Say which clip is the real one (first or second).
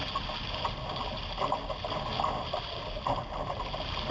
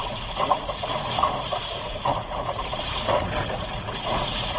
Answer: first